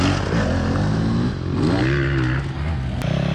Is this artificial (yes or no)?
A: no